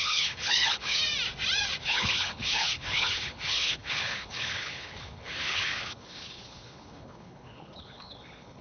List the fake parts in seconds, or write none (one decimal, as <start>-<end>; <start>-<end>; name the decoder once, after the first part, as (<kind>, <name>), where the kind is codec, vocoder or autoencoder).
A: 0.0-1.0 (codec, HILCodec); 1.8-8.6